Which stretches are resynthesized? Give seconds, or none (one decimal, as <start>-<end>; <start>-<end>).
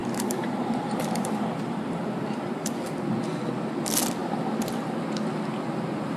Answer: 0.0-2.7